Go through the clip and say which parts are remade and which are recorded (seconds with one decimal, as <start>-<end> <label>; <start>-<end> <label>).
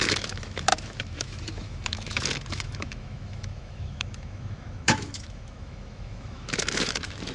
0.0-7.3 remade